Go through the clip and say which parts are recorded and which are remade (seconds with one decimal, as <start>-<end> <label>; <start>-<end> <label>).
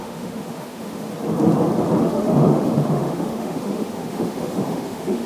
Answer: 0.0-1.1 remade; 1.1-2.0 recorded; 2.0-5.3 remade